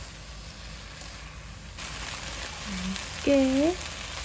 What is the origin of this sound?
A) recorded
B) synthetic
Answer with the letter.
A